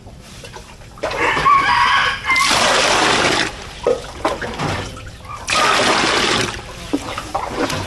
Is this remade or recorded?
recorded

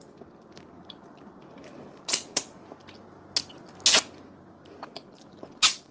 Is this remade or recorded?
recorded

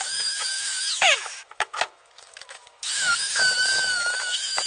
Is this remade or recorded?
remade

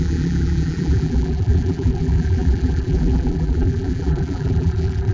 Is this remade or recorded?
remade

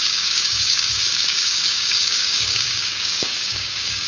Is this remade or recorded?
remade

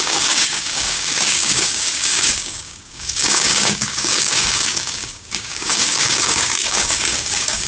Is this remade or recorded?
remade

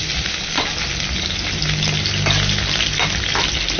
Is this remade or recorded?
recorded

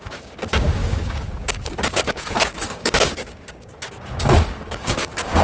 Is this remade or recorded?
remade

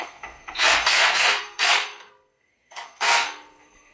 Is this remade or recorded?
remade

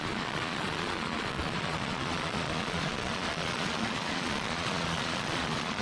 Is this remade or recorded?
remade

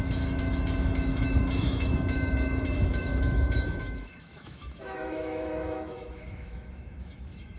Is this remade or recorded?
remade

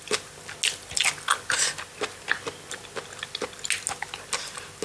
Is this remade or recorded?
recorded